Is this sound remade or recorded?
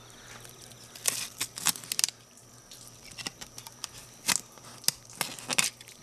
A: recorded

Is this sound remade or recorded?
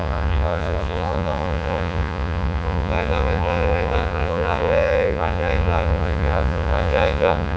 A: remade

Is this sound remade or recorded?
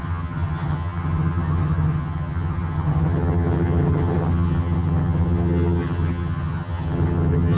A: remade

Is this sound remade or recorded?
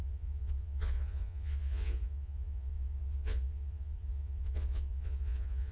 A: remade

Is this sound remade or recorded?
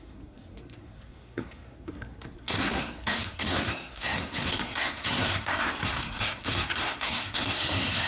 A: remade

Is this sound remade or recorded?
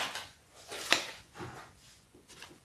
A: remade